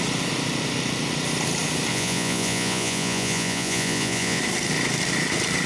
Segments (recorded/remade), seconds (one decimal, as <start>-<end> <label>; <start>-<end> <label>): 0.0-1.9 recorded; 1.9-4.4 remade; 4.4-5.7 recorded